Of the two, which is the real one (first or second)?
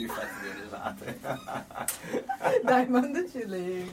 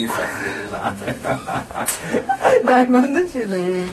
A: first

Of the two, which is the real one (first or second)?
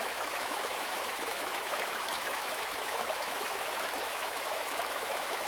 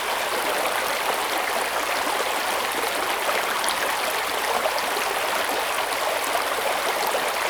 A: second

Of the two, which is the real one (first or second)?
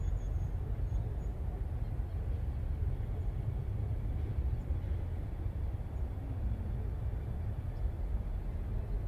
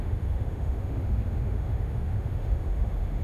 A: first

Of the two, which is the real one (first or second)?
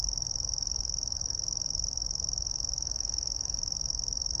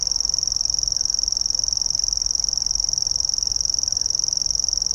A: second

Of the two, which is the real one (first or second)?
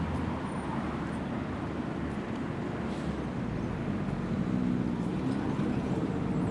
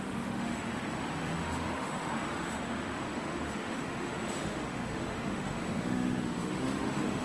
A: first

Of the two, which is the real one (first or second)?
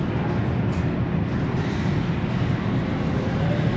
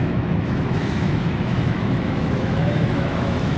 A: first